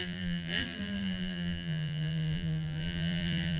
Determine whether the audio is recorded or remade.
remade